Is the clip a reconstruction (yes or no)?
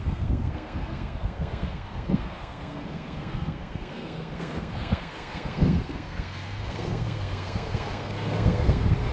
yes